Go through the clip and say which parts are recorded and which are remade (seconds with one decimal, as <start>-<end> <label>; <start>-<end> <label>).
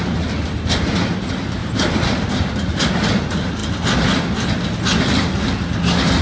0.0-6.2 recorded